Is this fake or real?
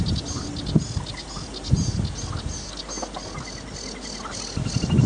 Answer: real